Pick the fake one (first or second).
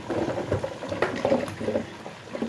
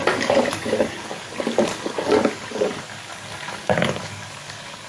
second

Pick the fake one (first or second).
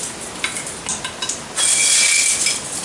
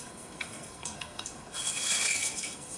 second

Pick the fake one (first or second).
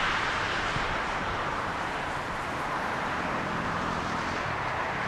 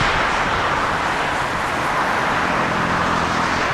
first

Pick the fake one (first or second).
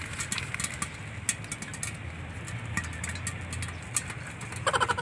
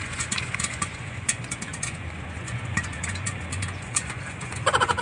second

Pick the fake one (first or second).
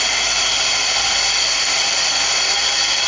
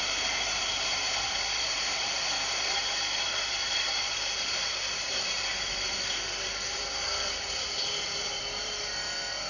second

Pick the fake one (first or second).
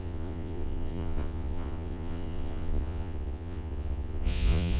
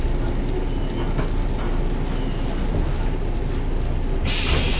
first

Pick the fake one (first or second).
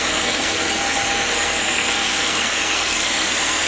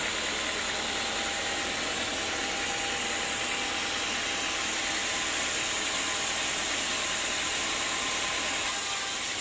first